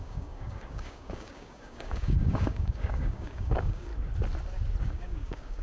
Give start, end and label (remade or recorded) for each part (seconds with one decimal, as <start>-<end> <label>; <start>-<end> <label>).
0.0-3.9 remade; 3.9-4.8 recorded; 4.8-5.6 remade